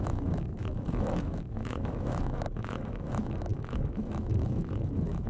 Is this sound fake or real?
fake